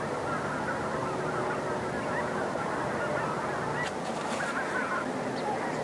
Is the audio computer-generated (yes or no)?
no